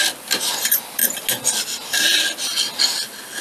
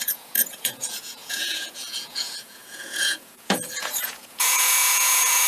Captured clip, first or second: first